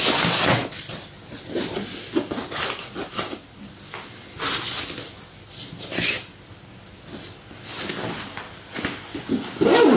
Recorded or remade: recorded